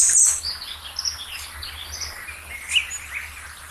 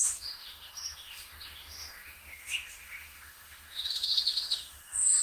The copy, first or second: second